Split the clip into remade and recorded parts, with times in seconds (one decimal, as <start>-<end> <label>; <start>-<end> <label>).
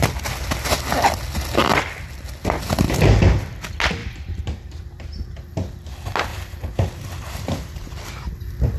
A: 0.0-4.0 recorded; 4.0-5.4 remade; 5.4-6.3 recorded; 6.3-8.0 remade; 8.0-8.8 recorded